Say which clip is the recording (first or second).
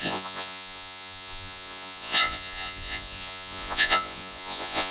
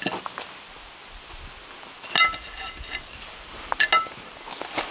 second